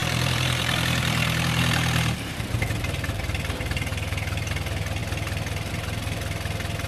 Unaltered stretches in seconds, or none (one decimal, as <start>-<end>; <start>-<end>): 3.2-3.9; 4.5-6.9